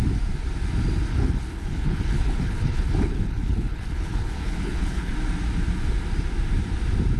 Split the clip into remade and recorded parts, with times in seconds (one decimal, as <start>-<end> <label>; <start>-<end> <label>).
0.0-1.1 recorded; 1.1-5.1 remade; 5.1-7.2 recorded